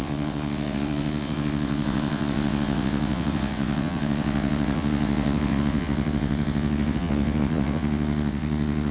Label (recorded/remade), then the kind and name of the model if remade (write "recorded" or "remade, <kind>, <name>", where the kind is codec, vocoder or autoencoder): remade, vocoder, WaveNeXt